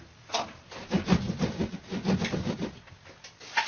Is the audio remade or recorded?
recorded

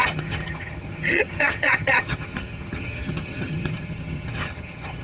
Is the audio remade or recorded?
remade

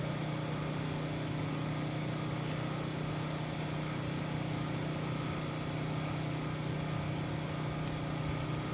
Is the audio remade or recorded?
recorded